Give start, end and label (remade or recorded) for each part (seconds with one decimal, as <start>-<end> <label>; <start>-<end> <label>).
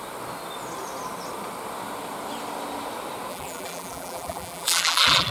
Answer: 0.0-3.3 recorded; 3.3-5.3 remade